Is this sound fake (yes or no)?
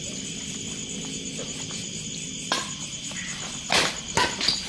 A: no